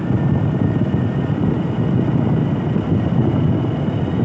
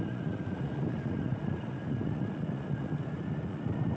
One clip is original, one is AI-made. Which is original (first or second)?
first